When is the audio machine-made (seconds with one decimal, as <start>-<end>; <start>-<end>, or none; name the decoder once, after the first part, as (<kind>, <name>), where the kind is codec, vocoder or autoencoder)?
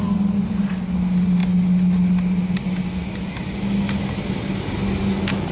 none